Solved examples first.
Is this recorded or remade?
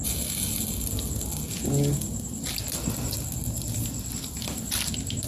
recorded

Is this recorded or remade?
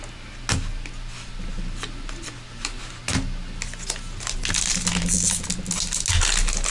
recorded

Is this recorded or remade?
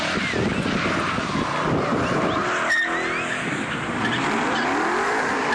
recorded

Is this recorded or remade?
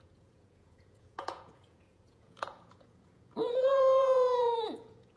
remade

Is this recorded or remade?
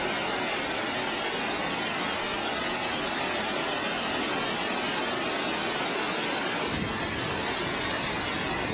recorded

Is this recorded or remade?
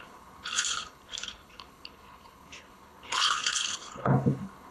remade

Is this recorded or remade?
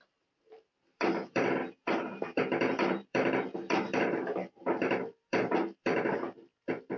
remade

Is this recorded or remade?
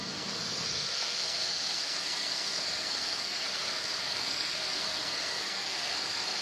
remade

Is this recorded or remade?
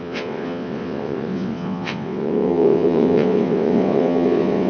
remade